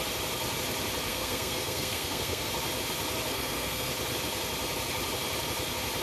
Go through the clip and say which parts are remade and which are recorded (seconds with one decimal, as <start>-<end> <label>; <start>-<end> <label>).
0.0-1.1 recorded; 1.1-2.5 remade; 2.5-3.3 recorded; 3.3-3.9 remade; 3.9-6.0 recorded